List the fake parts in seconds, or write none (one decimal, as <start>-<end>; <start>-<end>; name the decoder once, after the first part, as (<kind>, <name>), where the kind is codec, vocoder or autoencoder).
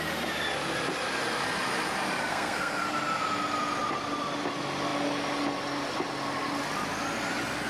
2.3-2.8 (codec, SNAC)